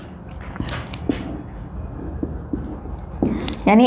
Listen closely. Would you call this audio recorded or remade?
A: recorded